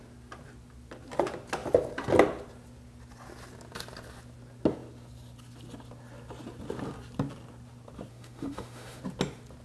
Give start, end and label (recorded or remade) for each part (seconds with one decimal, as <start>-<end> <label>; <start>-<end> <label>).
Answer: 0.0-8.1 recorded; 8.1-9.0 remade; 9.0-9.6 recorded